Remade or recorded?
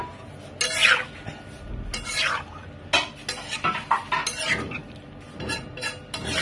recorded